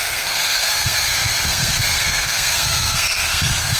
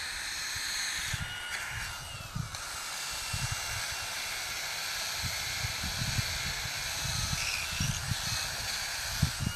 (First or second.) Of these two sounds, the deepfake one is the first